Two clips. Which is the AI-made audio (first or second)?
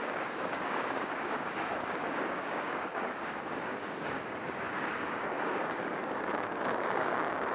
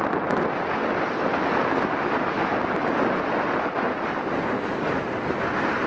first